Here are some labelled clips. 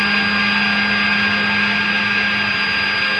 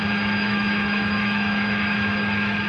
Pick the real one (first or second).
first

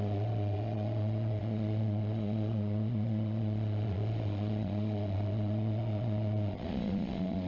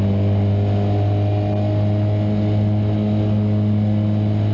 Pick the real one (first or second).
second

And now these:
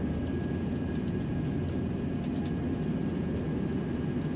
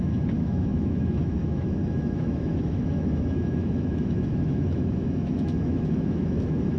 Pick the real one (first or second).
first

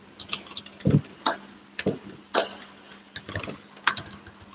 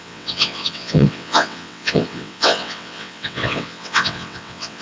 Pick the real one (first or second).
first